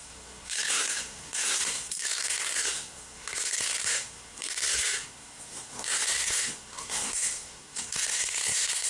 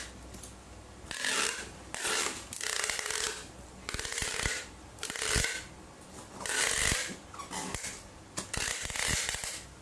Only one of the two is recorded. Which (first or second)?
second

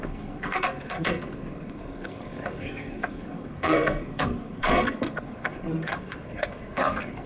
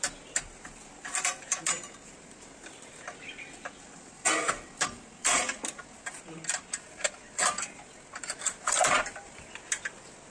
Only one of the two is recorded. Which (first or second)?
second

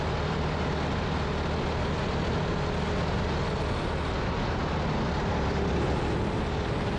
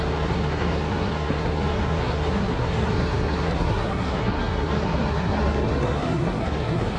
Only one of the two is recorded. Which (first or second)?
first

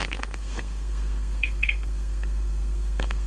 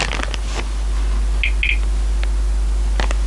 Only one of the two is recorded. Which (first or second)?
second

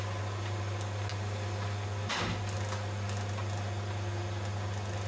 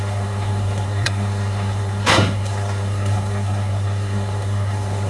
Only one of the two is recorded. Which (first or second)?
first